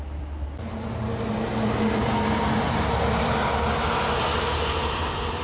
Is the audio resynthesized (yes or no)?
no